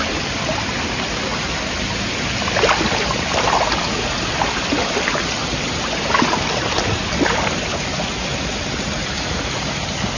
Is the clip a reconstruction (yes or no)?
no